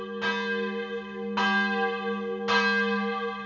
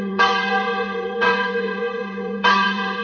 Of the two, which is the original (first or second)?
first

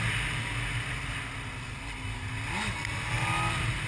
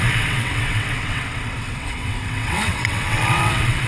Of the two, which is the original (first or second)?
first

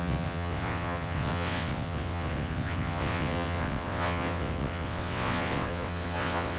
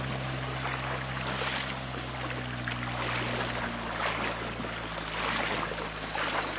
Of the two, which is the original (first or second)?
second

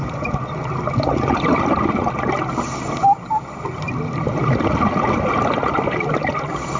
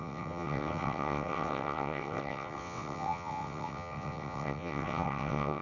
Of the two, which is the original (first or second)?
first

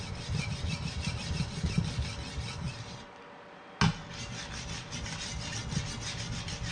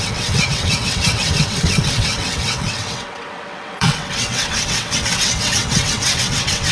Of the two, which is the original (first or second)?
first